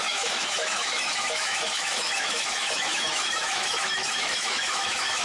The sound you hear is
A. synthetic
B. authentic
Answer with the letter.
A